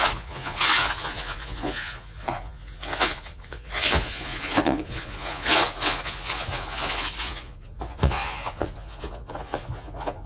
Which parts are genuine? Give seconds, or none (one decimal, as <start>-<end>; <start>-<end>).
none